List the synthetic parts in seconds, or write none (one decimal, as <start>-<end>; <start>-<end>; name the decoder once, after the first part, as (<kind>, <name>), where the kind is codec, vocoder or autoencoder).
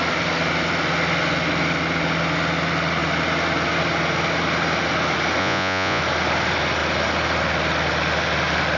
5.4-6.0 (vocoder, Vocos)